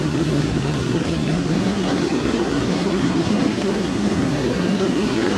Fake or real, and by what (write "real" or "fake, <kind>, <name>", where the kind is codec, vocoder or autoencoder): fake, codec, SNAC